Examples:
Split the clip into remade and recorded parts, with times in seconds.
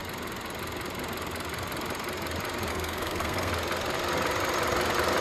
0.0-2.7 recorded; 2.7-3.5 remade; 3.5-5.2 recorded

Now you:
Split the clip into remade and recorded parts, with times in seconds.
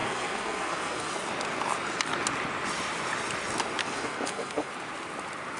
0.0-1.1 remade; 1.1-3.8 recorded; 3.8-4.7 remade; 4.7-5.6 recorded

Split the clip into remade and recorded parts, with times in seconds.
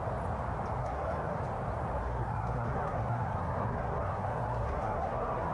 0.0-0.8 recorded; 0.8-1.4 remade; 1.4-2.0 recorded; 2.0-5.5 remade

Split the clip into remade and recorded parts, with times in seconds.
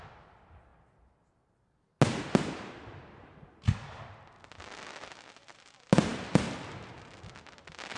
0.0-8.0 recorded